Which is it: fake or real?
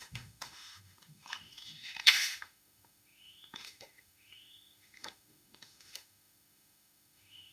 fake